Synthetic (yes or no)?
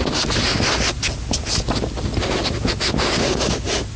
no